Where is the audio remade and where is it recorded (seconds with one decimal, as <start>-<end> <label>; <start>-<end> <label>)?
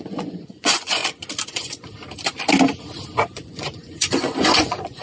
0.0-1.0 remade; 1.0-1.5 recorded; 1.5-1.9 remade; 1.9-3.3 recorded; 3.3-5.0 remade